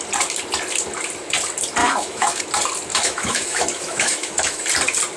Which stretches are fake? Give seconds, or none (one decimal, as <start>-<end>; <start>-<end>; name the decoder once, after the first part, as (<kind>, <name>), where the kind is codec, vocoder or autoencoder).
1.8-2.4 (autoencoder, DAC-VAE); 2.9-4.6